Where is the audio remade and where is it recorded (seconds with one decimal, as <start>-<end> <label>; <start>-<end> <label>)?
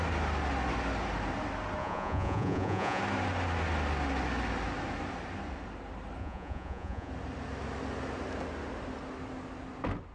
0.0-1.8 recorded; 1.8-3.0 remade; 3.0-6.2 recorded; 6.2-7.1 remade; 7.1-10.1 recorded